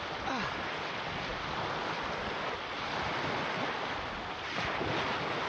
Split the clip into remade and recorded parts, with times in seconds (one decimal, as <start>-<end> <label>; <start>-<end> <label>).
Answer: 0.0-5.5 recorded

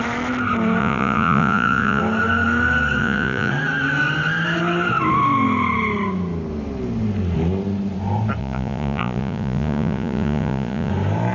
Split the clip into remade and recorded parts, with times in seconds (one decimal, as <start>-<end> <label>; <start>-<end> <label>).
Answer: 0.0-0.8 recorded; 0.8-2.0 remade; 2.0-3.0 recorded; 3.0-3.5 remade; 3.5-8.4 recorded; 8.4-10.9 remade; 10.9-11.3 recorded

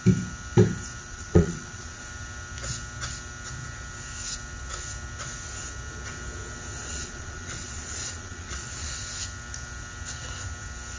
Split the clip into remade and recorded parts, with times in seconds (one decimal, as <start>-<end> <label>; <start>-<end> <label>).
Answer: 0.0-1.0 recorded; 1.0-2.0 remade; 2.0-6.8 recorded; 6.8-8.9 remade; 8.9-11.0 recorded

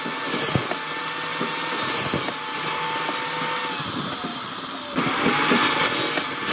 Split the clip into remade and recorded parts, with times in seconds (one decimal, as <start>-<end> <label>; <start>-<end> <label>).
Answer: 0.0-1.3 recorded; 1.3-2.1 remade; 2.1-4.3 recorded; 4.3-5.9 remade; 5.9-6.5 recorded

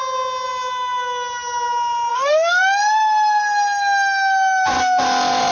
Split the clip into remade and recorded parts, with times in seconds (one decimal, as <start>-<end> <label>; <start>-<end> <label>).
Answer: 0.0-2.1 recorded; 2.1-2.6 remade; 2.6-5.5 recorded

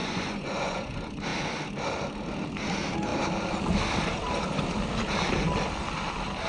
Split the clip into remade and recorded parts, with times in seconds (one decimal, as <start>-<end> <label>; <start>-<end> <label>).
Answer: 0.0-0.9 remade; 0.9-6.5 recorded

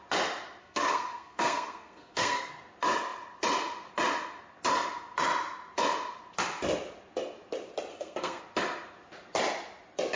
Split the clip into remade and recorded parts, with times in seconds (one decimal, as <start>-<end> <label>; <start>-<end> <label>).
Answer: 0.0-0.6 recorded; 0.6-2.5 remade; 2.5-7.9 recorded; 7.9-8.4 remade; 8.4-10.2 recorded